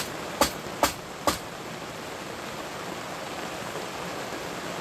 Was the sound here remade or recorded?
recorded